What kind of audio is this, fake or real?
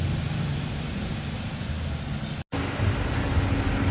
real